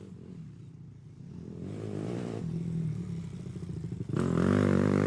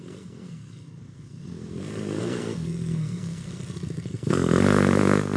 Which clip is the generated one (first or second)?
second